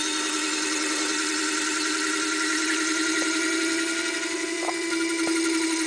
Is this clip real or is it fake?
real